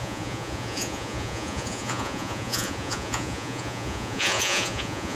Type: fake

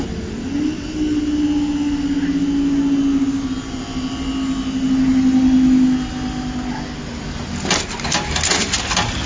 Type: real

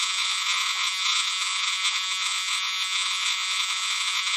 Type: fake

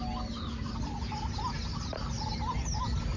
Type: real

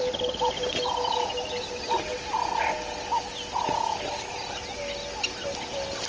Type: real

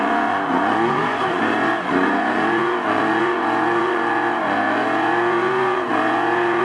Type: fake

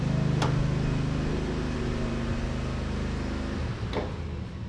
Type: real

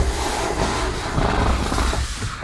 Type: real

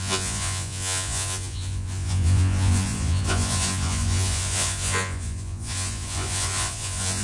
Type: fake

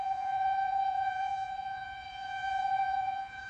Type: fake